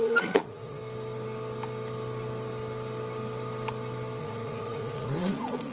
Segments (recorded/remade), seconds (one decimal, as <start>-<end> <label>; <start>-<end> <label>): 0.0-0.8 remade; 0.8-4.2 recorded; 4.2-5.7 remade